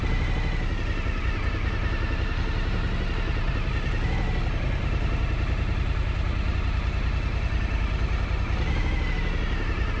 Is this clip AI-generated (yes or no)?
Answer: no